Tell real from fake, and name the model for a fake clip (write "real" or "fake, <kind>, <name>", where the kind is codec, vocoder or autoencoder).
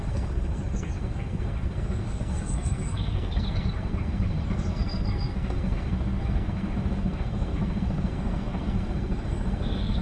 fake, codec, SNAC